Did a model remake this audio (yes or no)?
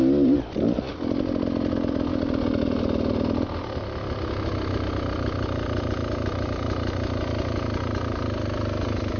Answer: no